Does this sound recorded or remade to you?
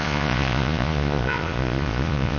remade